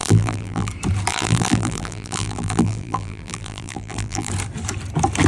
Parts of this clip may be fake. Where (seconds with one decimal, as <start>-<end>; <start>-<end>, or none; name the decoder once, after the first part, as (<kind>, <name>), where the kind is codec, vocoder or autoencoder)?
0.0-0.7 (vocoder, BigVGAN v2); 1.1-4.3